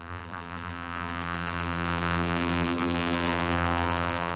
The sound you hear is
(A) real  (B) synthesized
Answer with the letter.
B